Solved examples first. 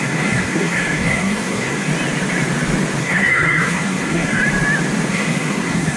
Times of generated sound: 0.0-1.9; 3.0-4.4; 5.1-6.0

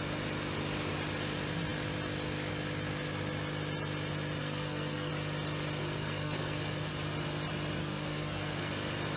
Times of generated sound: 4.4-5.1; 5.8-6.9; 7.8-8.7

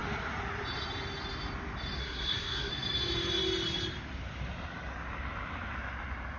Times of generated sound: 2.0-2.7

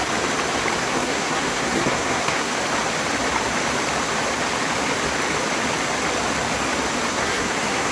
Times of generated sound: 0.8-2.5; 7.1-7.9

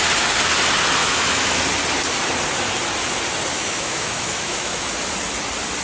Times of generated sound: 1.0-1.6; 3.5-4.9